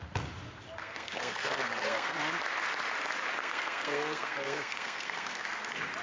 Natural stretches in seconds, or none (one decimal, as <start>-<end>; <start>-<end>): 0.0-0.8; 2.2-3.4; 5.6-6.0